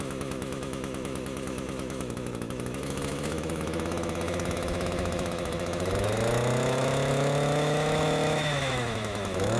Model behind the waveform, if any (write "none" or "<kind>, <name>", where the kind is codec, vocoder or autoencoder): autoencoder, DAC-VAE